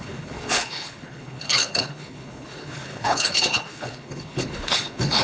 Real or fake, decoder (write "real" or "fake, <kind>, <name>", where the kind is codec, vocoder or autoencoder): fake, codec, HILCodec